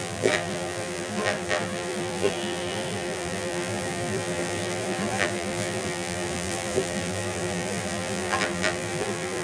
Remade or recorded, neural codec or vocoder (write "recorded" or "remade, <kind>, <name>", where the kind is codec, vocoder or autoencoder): remade, vocoder, BigVGAN v2